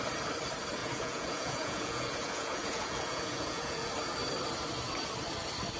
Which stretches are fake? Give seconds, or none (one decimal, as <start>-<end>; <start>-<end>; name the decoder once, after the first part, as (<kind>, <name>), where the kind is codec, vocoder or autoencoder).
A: 0.8-3.9 (vocoder, Vocos)